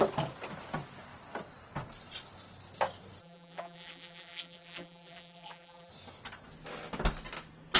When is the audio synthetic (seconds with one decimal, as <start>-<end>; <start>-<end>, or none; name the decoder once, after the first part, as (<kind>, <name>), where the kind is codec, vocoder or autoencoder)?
3.2-5.9 (vocoder, BigVGAN v2)